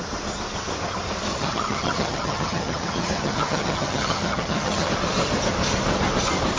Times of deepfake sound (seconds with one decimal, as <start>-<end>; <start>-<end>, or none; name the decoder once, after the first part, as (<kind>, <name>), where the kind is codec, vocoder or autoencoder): 1.3-4.9 (vocoder, HiFi-GAN)